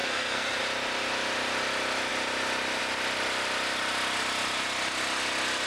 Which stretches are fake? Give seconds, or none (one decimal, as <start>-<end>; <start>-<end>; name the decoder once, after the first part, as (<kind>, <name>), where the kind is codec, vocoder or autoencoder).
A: 0.0-0.6 (codec, SNAC)